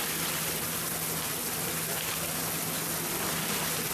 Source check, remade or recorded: recorded